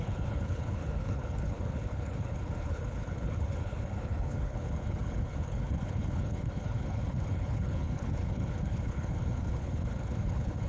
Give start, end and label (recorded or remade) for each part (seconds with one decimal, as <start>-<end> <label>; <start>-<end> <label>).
0.0-10.7 remade